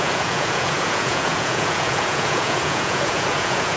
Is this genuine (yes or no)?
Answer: no